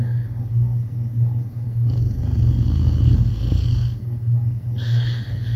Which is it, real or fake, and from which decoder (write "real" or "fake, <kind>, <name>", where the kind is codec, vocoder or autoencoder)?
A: fake, codec, SNAC